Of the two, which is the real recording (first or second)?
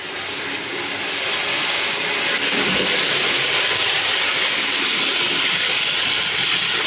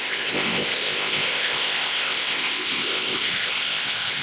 first